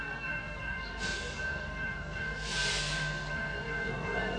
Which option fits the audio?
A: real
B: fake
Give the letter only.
B